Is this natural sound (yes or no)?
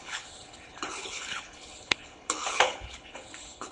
no